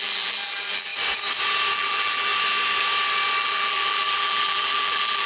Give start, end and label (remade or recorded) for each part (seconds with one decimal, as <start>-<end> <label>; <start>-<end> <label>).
0.0-0.9 remade; 0.9-1.7 recorded; 1.7-2.3 remade; 2.3-3.4 recorded; 3.4-5.3 remade